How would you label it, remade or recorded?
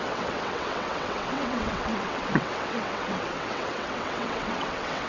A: remade